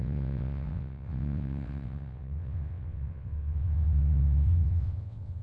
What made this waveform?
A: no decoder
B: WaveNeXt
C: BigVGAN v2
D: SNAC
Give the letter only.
B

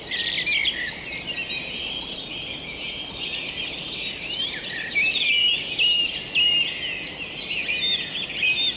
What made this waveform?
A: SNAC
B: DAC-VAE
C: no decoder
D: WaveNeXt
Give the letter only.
C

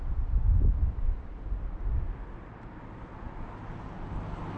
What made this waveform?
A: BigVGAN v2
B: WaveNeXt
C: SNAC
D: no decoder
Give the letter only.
D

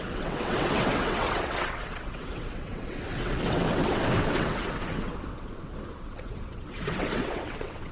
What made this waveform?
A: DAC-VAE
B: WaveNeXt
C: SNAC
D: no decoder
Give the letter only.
B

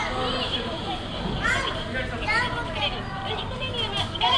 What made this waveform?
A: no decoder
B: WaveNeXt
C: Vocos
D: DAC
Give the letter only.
A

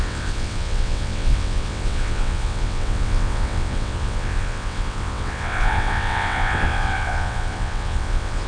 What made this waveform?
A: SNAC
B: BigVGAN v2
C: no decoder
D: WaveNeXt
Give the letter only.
D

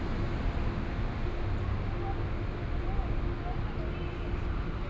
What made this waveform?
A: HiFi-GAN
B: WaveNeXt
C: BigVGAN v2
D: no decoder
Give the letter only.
D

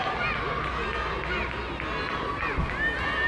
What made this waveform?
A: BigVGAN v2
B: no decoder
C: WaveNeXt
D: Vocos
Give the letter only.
B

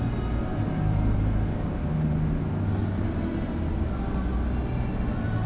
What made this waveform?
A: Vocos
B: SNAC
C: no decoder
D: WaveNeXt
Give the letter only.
C